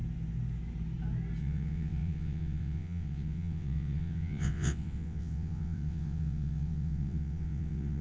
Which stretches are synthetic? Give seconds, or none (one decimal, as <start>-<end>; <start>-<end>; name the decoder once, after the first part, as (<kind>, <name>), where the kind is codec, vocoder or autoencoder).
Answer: 1.4-8.0 (vocoder, WaveNeXt)